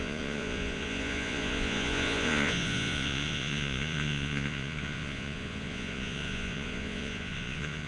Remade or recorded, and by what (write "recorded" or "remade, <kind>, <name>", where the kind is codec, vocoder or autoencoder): remade, vocoder, Vocos